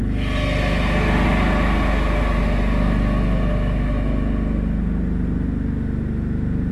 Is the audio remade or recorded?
recorded